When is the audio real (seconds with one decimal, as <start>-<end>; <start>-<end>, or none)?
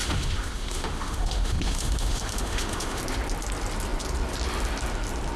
3.0-5.4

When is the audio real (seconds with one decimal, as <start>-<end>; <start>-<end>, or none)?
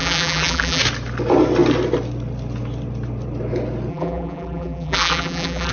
0.8-3.9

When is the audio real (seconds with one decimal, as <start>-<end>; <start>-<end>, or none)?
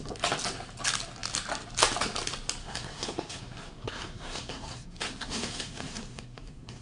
0.0-2.6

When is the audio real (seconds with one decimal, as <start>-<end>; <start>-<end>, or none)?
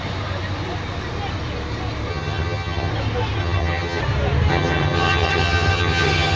0.0-2.1; 2.9-3.4; 4.0-4.5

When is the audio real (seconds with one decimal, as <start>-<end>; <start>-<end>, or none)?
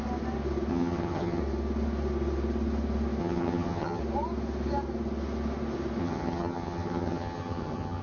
0.0-0.7; 1.4-3.2; 4.0-6.0